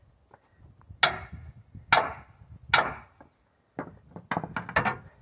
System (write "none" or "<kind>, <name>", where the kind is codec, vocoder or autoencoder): none